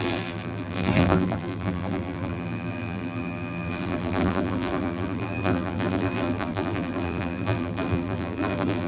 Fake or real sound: fake